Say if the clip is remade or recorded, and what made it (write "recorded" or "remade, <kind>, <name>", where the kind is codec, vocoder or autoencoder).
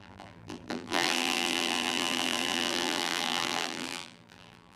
remade, vocoder, BigVGAN v2